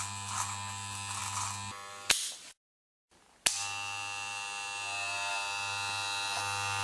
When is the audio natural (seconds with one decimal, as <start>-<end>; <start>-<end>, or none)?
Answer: 0.0-6.8